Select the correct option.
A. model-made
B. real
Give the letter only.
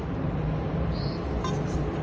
B